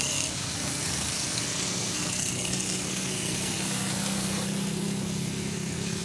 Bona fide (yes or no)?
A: no